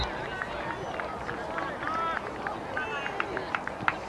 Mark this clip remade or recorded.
recorded